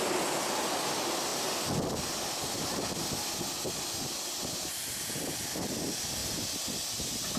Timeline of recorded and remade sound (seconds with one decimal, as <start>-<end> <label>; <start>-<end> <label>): 0.0-7.4 recorded